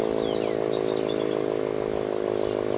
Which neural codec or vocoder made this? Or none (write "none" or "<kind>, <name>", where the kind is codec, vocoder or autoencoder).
none